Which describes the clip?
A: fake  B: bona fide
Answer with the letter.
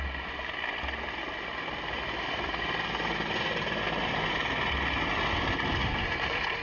B